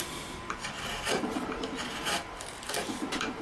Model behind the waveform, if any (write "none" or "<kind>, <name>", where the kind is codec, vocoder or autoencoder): vocoder, BigVGAN v2